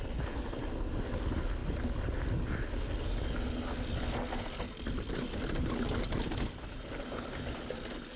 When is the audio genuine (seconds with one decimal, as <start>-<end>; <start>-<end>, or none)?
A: 0.0-8.2